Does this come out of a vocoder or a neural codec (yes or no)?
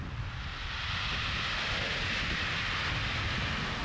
no